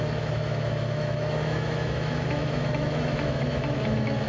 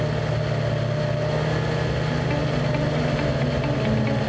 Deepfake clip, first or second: first